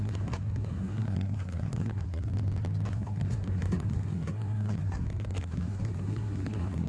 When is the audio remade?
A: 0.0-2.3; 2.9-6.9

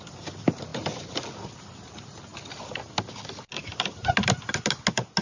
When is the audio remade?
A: none

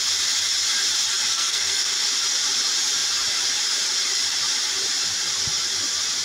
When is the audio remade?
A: 1.3-1.9

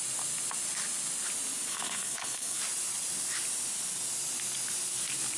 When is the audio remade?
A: 1.7-2.6

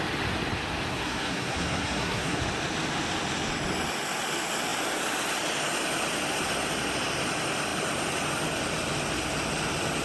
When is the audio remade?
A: 0.9-2.4

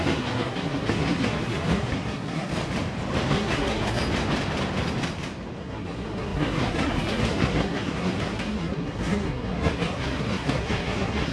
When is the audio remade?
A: 0.0-2.5; 3.3-4.0; 5.6-11.3

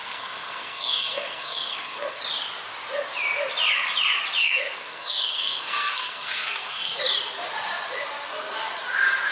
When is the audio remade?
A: 0.0-2.2; 4.4-7.0

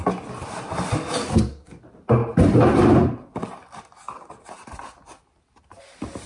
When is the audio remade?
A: 1.3-1.8